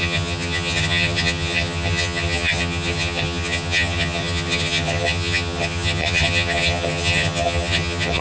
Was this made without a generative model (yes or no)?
no